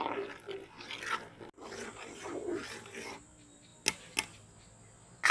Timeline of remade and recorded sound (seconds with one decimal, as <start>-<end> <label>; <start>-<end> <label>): 0.0-5.3 recorded